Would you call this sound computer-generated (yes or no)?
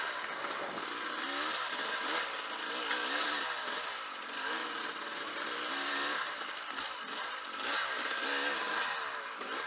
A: no